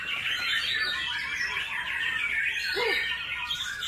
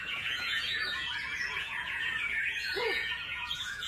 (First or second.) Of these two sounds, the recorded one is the first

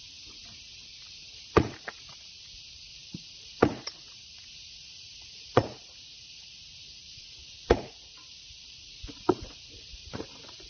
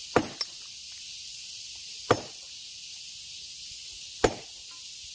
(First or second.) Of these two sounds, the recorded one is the second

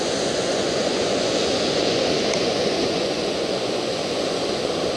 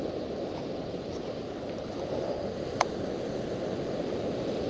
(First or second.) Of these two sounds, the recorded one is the second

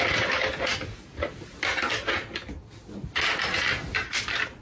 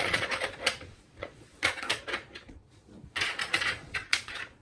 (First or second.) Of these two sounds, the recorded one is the first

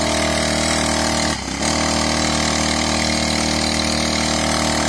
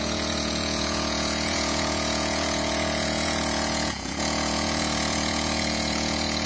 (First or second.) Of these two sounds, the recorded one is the first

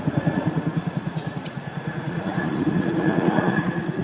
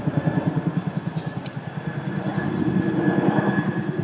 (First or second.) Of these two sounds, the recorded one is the second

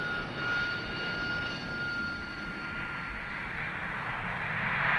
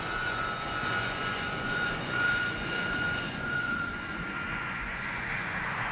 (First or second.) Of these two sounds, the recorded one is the first